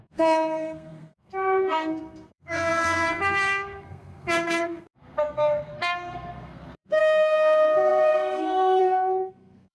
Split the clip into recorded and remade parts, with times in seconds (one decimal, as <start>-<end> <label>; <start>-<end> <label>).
0.0-9.7 remade